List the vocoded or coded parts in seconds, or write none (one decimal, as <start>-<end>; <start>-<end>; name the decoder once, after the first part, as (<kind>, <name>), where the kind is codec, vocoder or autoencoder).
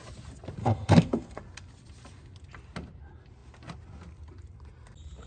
0.6-1.4 (codec, SNAC)